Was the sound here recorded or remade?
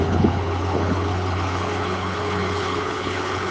remade